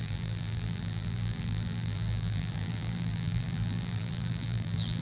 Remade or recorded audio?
remade